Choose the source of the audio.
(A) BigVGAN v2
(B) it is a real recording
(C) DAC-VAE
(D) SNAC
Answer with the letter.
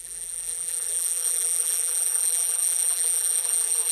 A